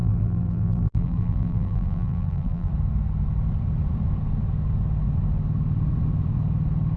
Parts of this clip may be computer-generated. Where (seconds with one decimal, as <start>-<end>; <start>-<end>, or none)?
0.0-2.7